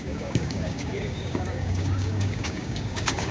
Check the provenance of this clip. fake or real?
fake